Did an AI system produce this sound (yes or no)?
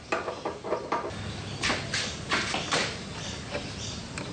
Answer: no